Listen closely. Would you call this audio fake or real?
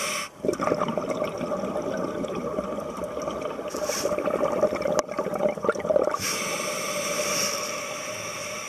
real